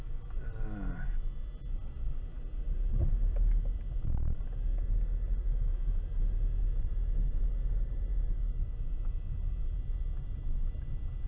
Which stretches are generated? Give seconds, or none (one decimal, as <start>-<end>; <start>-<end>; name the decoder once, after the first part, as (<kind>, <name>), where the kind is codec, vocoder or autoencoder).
2.3-3.1 (vocoder, BigVGAN v2)